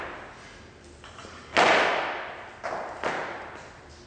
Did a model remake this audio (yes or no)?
no